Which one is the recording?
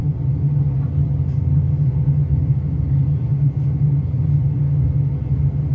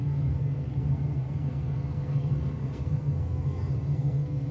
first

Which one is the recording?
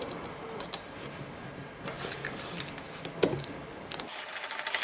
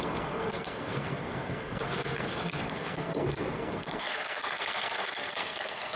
first